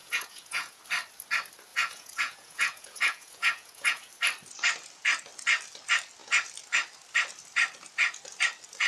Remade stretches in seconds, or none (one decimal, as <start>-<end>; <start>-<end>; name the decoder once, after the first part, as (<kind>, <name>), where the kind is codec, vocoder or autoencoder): 0.0-0.8 (vocoder, Vocos); 1.7-4.1